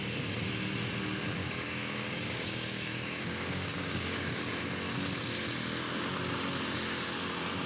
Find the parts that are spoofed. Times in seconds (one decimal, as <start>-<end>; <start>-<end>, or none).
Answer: 1.4-4.4